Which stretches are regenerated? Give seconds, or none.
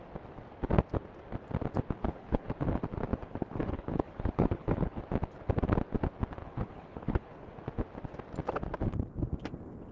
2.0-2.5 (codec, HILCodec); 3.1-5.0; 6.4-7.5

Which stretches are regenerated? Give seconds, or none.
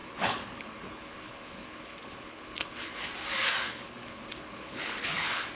0.0-3.1 (codec, HILCodec); 3.6-5.5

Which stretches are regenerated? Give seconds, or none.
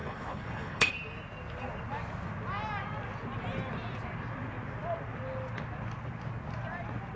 0.0-0.9 (codec, HILCodec)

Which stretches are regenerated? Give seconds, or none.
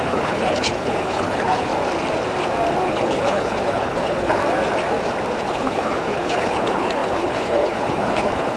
0.0-1.7 (codec, HILCodec); 2.9-4.4; 5.4-8.6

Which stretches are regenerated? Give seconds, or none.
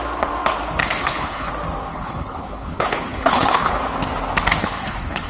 0.8-1.5 (codec, HILCodec); 1.9-3.8; 4.6-5.3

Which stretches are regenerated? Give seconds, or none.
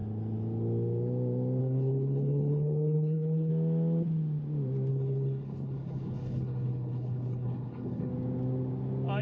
1.6-3.5 (codec, HILCodec); 4.9-8.1